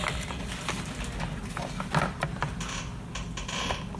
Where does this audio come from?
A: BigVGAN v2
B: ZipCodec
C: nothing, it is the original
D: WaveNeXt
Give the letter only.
C